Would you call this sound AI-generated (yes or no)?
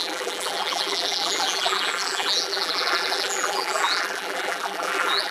yes